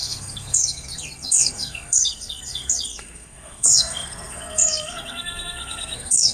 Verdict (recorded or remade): remade